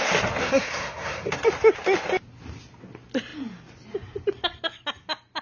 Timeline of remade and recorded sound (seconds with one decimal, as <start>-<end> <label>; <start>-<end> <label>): 0.0-0.4 recorded; 0.4-1.3 remade; 1.3-5.4 recorded